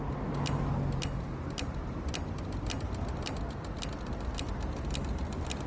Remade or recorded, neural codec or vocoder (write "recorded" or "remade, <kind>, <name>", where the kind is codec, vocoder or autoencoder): recorded